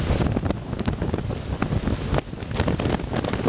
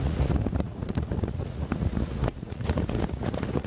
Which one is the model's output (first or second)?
second